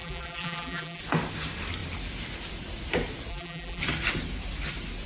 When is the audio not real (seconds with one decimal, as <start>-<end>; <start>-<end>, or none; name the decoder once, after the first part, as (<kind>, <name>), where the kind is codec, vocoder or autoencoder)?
0.0-1.0 (vocoder, BigVGAN v2); 3.3-3.8

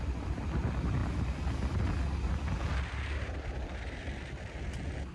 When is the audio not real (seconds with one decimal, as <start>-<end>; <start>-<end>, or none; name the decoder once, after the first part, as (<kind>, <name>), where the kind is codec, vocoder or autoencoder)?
none

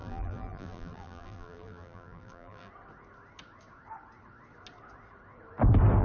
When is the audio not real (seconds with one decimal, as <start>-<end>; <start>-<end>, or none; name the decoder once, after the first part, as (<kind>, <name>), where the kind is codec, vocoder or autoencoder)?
0.0-2.7 (vocoder, BigVGAN v2)

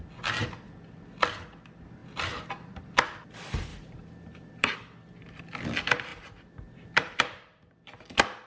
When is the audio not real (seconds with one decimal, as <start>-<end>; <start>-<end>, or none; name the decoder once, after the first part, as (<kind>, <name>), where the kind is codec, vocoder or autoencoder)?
3.7-5.4 (vocoder, BigVGAN v2); 6.1-7.7

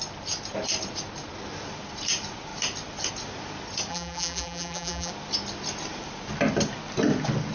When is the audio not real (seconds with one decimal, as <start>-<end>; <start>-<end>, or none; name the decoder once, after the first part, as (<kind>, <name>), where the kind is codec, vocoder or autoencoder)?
3.9-5.1 (vocoder, BigVGAN v2)

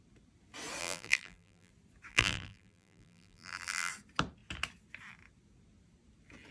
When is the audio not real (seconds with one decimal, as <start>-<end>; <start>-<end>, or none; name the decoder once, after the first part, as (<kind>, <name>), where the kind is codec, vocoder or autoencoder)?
0.8-1.7 (vocoder, BigVGAN v2); 2.1-3.9

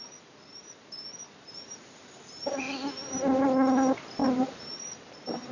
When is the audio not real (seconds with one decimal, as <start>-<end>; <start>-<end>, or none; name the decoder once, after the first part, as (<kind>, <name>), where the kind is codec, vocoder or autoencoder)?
4.2-5.5 (vocoder, BigVGAN v2)